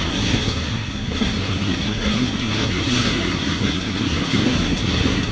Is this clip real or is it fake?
fake